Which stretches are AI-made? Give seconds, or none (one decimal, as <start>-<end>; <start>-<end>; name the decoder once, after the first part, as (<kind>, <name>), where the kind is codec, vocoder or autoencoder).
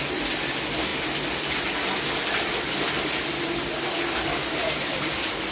none